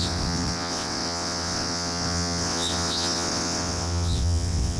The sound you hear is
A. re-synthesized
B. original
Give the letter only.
A